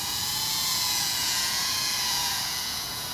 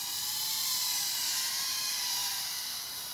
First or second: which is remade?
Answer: first